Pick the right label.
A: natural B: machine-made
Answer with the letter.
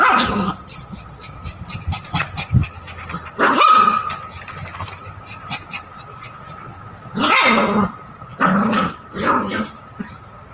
A